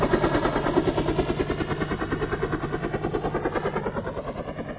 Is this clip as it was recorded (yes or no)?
yes